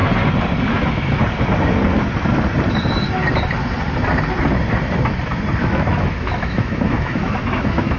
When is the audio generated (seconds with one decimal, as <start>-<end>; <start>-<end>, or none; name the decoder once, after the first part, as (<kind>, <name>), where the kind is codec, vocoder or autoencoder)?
0.7-1.2 (autoencoder, DAC-VAE); 5.6-8.0